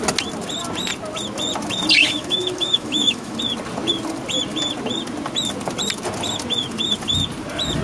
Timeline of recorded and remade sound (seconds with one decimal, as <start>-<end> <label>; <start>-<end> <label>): 0.0-2.0 recorded; 2.0-3.4 remade; 3.4-7.8 recorded

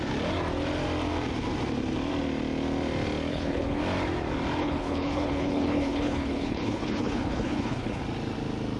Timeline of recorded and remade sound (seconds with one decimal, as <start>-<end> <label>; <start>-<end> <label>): 0.0-3.3 recorded; 3.3-3.8 remade; 3.8-4.6 recorded; 4.6-8.0 remade; 8.0-8.8 recorded